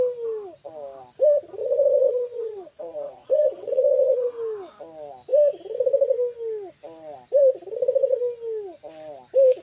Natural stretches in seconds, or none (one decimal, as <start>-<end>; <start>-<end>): 0.0-1.6; 4.3-9.6

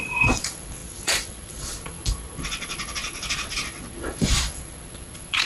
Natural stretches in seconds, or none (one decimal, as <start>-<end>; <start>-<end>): none

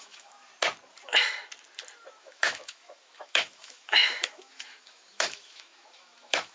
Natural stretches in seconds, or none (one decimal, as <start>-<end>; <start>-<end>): 0.5-2.2

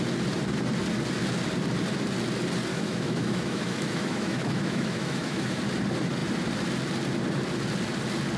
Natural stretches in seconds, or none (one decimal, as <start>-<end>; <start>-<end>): 0.0-2.7; 5.6-8.4

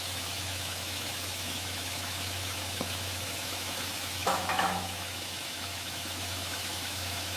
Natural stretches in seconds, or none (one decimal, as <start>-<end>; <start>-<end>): none